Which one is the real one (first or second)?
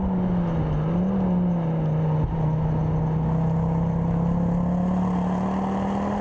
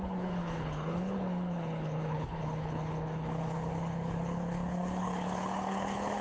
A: first